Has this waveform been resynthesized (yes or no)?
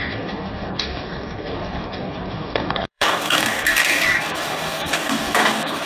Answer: yes